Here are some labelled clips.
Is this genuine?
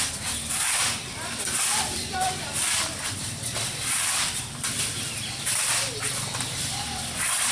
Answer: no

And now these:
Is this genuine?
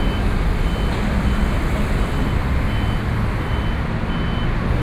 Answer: yes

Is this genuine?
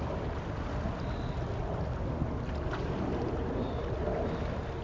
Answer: yes